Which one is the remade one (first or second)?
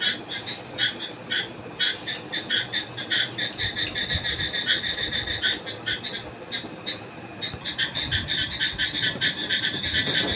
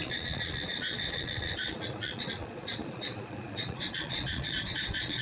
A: second